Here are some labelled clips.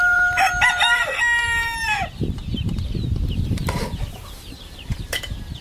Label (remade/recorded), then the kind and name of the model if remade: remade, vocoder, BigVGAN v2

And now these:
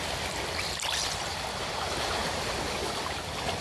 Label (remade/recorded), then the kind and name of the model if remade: recorded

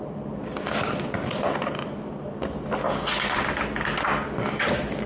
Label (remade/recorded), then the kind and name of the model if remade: recorded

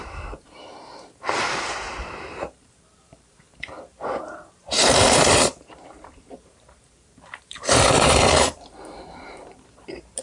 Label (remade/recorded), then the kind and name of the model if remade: remade, vocoder, BigVGAN v2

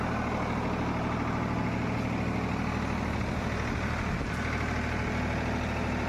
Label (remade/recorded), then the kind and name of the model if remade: recorded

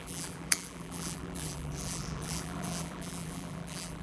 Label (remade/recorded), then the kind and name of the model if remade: remade, vocoder, BigVGAN v2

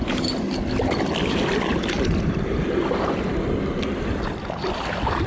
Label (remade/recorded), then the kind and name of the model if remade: recorded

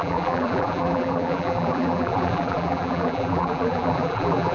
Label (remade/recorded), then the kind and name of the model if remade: remade, vocoder, BigVGAN v2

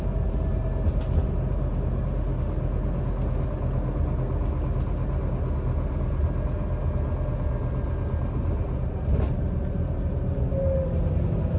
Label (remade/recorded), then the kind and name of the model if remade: recorded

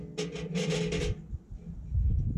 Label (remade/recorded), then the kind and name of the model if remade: recorded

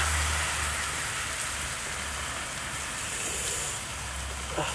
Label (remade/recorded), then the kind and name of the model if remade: recorded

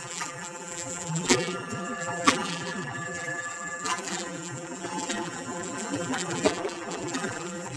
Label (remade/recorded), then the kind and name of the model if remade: remade, vocoder, BigVGAN v2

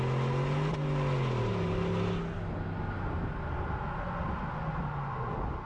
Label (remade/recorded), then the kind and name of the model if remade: recorded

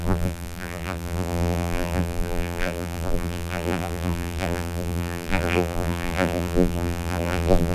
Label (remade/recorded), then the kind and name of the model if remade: remade, vocoder, BigVGAN v2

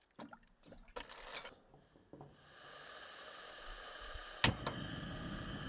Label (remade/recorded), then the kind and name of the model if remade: recorded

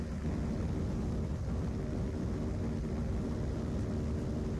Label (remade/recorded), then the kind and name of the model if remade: recorded